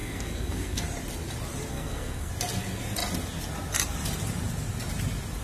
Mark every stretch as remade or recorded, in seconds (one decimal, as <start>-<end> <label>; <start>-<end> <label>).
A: 0.0-0.8 remade; 0.8-1.7 recorded; 1.7-2.3 remade; 2.3-5.4 recorded